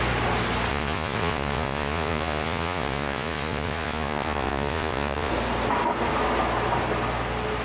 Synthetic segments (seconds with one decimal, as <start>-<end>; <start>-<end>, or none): 0.7-5.3